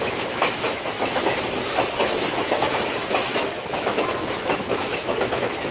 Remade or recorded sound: remade